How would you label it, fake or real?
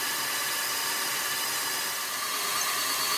real